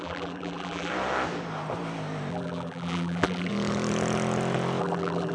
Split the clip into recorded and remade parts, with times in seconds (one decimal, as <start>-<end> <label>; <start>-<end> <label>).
0.0-0.9 remade; 0.9-2.3 recorded; 2.3-3.5 remade; 3.5-4.8 recorded; 4.8-5.3 remade